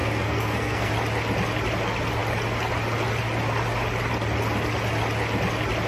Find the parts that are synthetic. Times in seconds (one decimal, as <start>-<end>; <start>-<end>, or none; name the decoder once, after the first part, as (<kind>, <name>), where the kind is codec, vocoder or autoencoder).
0.0-0.9 (codec, SNAC)